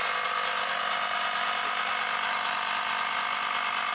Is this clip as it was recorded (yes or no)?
yes